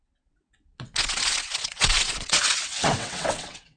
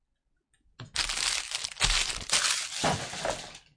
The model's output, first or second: first